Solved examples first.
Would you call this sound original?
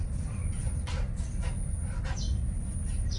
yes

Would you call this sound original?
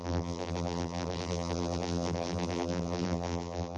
no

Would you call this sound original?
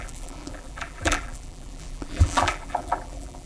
no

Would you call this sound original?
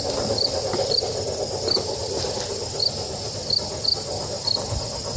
yes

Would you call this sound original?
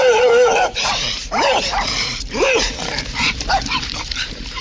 no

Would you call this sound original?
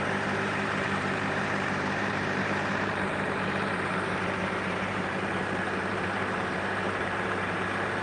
no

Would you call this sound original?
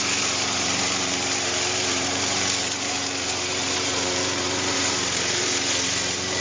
no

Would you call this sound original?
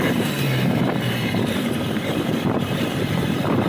no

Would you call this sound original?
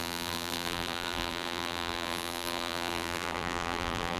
no